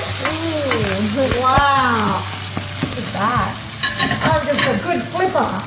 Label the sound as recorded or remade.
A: recorded